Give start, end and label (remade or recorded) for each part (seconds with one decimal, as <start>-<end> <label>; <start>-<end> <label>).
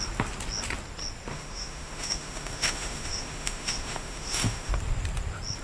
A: 0.0-1.3 recorded; 1.3-4.7 remade; 4.7-5.6 recorded